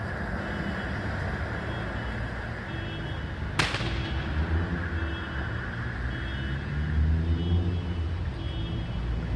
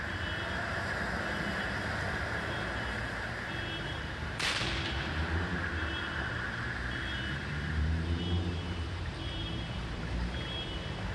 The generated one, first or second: second